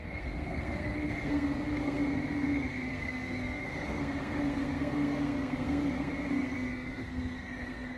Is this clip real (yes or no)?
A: no